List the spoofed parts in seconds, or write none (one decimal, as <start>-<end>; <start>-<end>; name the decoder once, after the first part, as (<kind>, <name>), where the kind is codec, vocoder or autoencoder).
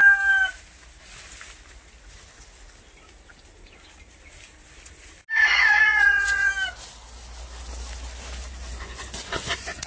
5.5-6.5 (vocoder, Vocos); 8.7-9.9